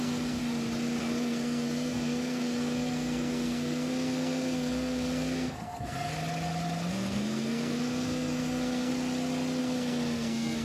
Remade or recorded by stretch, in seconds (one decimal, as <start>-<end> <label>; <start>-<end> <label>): 0.0-0.4 remade; 0.4-1.0 recorded; 1.0-6.1 remade; 6.1-6.9 recorded; 6.9-8.9 remade; 8.9-9.6 recorded; 9.6-10.6 remade